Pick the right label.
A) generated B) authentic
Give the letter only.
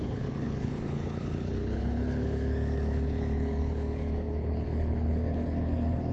A